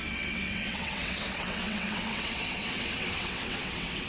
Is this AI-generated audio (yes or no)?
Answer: yes